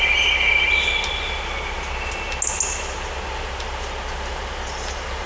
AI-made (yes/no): no